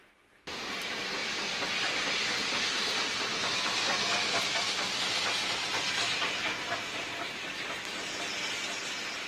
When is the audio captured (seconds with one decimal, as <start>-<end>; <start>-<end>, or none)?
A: 0.0-9.3

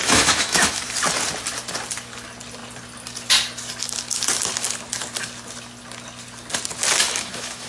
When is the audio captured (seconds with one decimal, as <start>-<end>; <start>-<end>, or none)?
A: 0.8-7.0

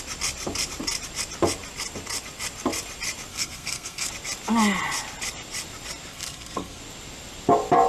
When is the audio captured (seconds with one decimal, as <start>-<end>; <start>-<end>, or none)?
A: 0.0-3.3; 4.1-6.1; 6.8-7.9